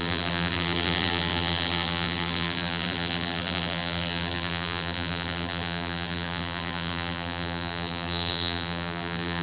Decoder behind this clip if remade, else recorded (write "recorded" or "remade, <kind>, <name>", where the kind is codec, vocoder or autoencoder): remade, vocoder, BigVGAN v2